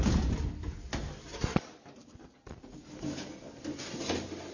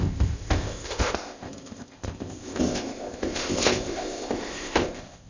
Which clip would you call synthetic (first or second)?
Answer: second